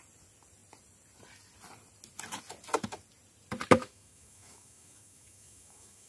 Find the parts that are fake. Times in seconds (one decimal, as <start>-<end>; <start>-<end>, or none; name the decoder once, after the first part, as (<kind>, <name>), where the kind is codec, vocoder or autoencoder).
3.8-6.1 (autoencoder, DAC-VAE)